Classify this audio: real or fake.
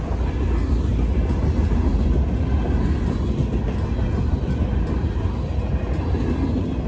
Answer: real